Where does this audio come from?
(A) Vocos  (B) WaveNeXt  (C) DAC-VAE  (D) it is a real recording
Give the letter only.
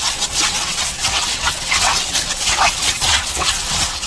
B